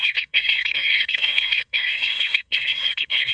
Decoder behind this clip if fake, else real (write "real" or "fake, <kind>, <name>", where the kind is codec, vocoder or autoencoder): fake, codec, SNAC